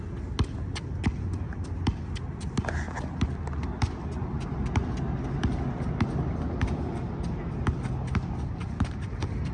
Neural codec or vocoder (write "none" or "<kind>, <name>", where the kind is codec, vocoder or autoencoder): none